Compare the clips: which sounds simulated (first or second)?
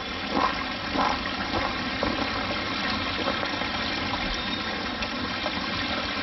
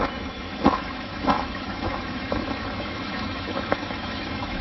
second